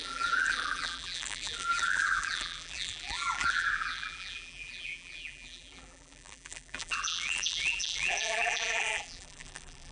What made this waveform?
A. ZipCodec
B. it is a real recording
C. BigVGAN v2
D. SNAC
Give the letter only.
C